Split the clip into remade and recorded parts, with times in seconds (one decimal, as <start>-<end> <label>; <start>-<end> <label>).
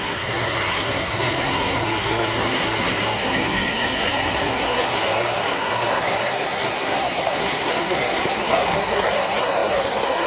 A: 0.0-10.3 remade